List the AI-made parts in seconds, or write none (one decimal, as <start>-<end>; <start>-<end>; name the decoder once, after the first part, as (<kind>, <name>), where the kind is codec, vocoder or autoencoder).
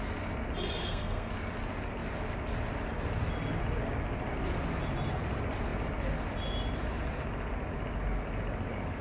0.8-1.3 (codec, SNAC)